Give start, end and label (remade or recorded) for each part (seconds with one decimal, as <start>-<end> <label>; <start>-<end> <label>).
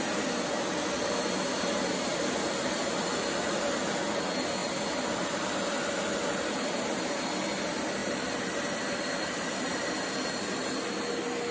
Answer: 0.0-2.1 recorded; 2.1-3.5 remade; 3.5-4.6 recorded; 4.6-7.2 remade; 7.2-8.0 recorded; 8.0-9.9 remade; 9.9-11.5 recorded